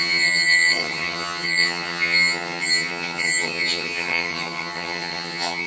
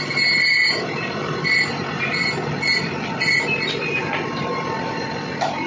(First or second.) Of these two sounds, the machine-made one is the first